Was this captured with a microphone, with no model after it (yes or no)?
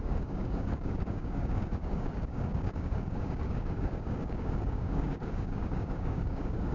no